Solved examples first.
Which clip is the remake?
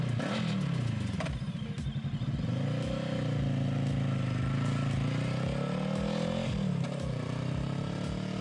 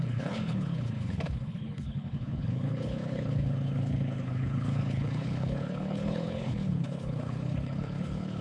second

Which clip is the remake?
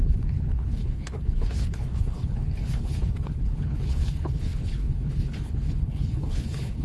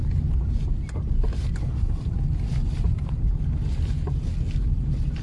first